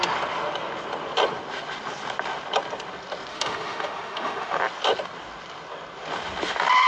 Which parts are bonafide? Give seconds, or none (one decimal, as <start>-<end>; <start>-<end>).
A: 0.0-3.3; 4.6-6.9